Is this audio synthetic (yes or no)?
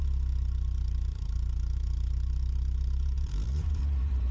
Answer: yes